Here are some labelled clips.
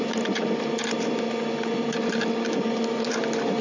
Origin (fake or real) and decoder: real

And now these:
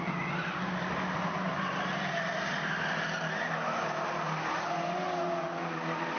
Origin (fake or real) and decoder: real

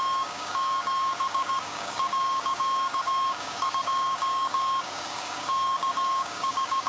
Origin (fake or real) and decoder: fake, codec, DAC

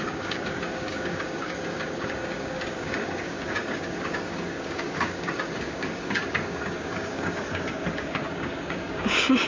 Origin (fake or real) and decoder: fake, codec, DAC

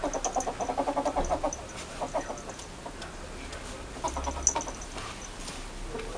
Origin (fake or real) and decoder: real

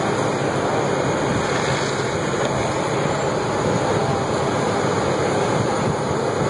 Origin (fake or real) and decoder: real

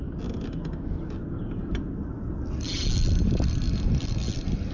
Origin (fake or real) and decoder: real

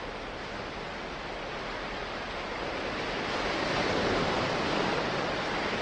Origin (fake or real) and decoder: real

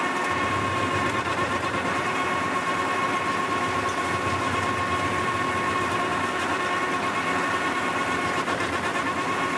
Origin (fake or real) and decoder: real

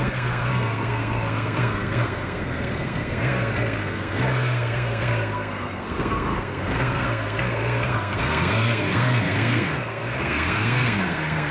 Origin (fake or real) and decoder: fake, codec, SNAC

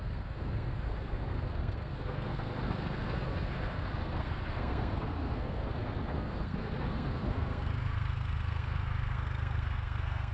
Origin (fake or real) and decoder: fake, codec, SNAC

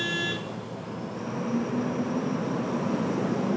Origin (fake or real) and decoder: real